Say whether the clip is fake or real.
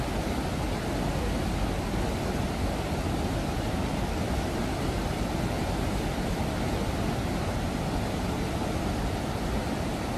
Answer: real